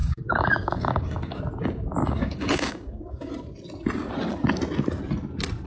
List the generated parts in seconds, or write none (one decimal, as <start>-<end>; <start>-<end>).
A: 0.0-1.4; 2.0-3.3